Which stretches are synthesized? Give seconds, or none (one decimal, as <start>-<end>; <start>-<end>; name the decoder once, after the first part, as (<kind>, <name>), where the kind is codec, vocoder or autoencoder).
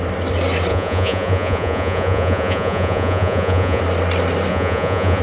0.7-3.8 (vocoder, Vocos); 4.5-5.2